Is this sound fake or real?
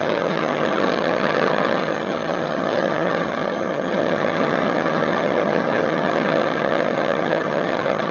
fake